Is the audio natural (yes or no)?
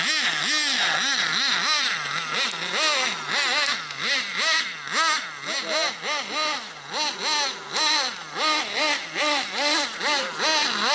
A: yes